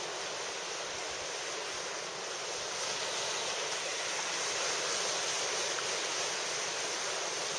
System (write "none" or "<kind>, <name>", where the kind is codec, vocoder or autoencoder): none